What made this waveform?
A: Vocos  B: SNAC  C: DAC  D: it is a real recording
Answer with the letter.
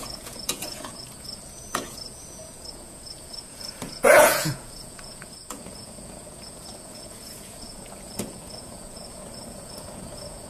A